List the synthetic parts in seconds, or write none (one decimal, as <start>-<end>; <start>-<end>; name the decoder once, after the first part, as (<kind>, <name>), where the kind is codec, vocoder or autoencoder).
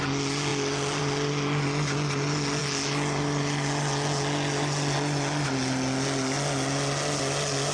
none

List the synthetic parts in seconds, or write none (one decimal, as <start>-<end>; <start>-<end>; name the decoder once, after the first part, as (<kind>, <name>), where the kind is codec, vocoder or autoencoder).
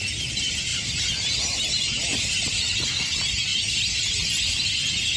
none